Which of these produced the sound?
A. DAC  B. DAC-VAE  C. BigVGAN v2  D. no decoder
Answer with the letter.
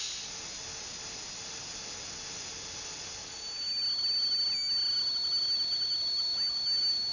D